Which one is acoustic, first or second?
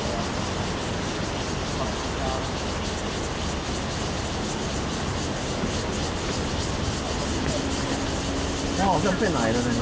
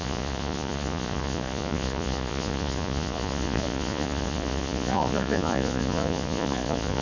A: first